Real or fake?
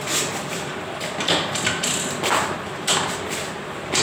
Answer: real